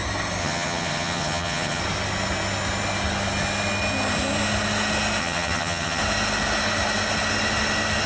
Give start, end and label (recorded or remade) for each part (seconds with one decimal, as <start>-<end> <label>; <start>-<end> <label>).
0.0-0.4 recorded; 0.4-1.8 remade; 1.8-5.2 recorded; 5.2-6.0 remade; 6.0-8.1 recorded